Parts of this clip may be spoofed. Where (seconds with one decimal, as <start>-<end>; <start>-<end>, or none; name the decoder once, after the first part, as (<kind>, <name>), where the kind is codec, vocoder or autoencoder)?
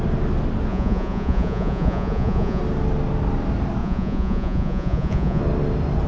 0.7-2.6 (vocoder, Vocos); 3.8-5.4